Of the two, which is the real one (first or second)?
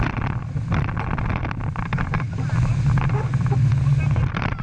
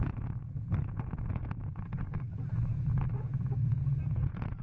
first